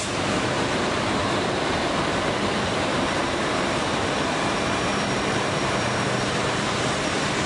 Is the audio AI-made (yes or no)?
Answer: yes